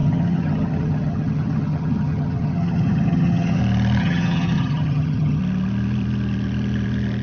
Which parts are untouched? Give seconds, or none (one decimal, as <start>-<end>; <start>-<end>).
3.6-4.0; 5.4-7.2